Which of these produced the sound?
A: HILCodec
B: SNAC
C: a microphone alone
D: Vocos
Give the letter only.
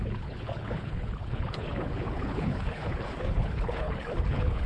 A